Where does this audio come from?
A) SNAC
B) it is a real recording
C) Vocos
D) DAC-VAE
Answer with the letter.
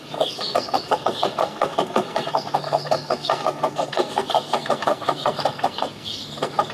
A